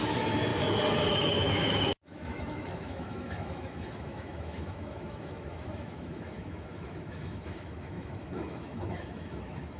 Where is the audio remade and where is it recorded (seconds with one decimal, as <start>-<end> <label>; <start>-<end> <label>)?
0.0-0.5 remade; 0.5-1.1 recorded; 1.1-9.8 remade

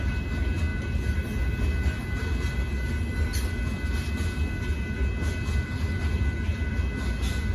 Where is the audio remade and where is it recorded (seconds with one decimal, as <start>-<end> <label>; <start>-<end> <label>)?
0.0-7.5 recorded